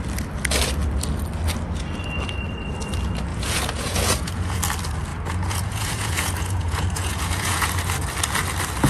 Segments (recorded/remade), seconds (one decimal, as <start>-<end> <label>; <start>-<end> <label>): 0.0-3.3 recorded; 3.3-4.6 remade; 4.6-5.1 recorded; 5.1-7.7 remade; 7.7-8.9 recorded